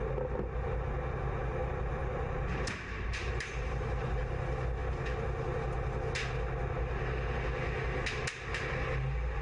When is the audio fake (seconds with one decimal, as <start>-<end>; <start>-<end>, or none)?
2.0-4.2